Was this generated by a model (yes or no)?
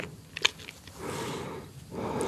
no